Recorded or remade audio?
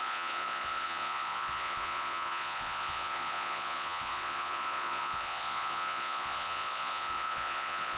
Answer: remade